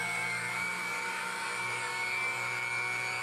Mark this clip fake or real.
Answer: fake